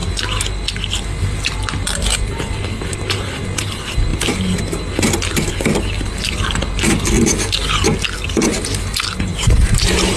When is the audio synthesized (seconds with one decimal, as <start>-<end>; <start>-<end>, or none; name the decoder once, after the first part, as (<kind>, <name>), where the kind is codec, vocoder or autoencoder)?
4.1-4.6 (vocoder, BigVGAN v2)

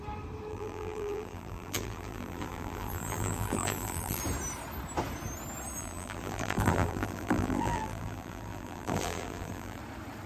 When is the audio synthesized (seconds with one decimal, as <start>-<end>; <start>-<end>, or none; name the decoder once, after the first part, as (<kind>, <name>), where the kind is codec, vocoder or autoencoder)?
0.5-4.2 (vocoder, BigVGAN v2); 5.8-9.8

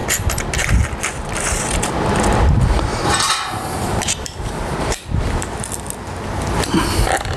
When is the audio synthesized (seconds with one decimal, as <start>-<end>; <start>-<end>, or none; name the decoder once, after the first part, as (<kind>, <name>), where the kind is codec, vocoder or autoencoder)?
2.9-5.3 (vocoder, BigVGAN v2)

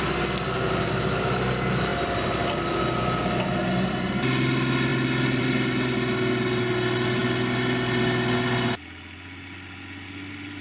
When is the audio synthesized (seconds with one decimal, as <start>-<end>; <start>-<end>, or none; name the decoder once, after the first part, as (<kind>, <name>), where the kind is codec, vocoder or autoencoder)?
1.9-2.8 (vocoder, BigVGAN v2)

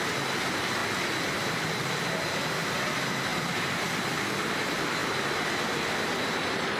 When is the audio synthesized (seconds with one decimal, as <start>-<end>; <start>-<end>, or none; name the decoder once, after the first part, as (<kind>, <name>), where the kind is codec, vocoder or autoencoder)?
0.8-2.3 (vocoder, BigVGAN v2)

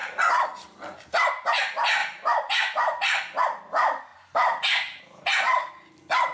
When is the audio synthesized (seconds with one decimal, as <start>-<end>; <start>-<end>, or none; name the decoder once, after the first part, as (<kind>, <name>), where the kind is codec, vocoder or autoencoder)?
0.0-6.3 (vocoder, BigVGAN v2)

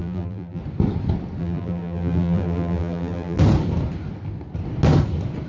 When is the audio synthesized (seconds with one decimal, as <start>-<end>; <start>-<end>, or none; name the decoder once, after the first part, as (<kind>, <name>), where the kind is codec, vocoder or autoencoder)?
0.0-0.6 (vocoder, BigVGAN v2); 1.4-3.4

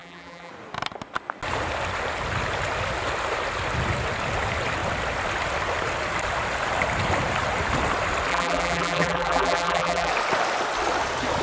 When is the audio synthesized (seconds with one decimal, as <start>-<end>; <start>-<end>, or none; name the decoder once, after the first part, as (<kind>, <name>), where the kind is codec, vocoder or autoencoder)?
0.0-0.5 (vocoder, BigVGAN v2); 8.3-10.1